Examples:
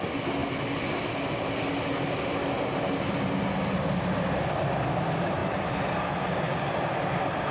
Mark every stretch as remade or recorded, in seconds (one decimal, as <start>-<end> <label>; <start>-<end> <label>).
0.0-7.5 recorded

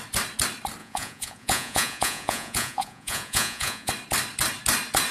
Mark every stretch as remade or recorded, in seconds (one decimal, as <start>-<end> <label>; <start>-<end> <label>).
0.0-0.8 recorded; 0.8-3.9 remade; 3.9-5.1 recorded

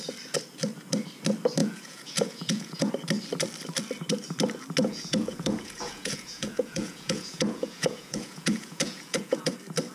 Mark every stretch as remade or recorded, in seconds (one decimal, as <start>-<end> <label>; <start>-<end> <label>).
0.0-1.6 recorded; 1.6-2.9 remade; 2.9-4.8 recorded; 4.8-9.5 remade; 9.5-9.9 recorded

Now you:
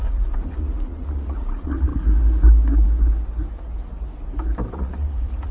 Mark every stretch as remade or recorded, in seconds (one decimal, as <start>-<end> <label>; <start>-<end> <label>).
0.0-1.9 remade; 1.9-4.7 recorded; 4.7-5.5 remade

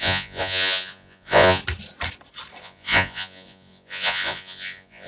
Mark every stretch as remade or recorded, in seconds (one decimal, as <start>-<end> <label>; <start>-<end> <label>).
0.0-1.6 remade; 1.6-2.6 recorded; 2.6-5.1 remade

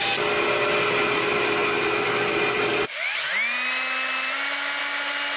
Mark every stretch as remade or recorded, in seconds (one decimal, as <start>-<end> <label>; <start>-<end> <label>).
0.0-5.4 recorded

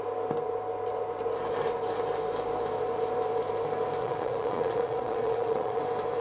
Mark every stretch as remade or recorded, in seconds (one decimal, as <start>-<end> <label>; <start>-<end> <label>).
0.0-4.0 recorded; 4.0-5.8 remade; 5.8-6.2 recorded

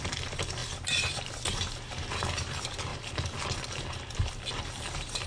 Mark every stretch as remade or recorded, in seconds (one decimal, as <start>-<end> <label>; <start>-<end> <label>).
0.0-5.3 recorded